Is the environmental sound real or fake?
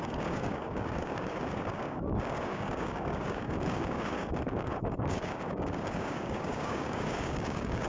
fake